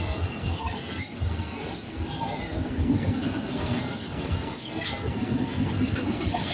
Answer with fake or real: fake